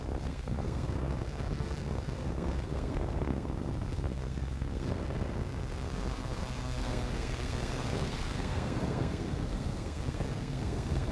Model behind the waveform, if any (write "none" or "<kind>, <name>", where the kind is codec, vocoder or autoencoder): codec, SNAC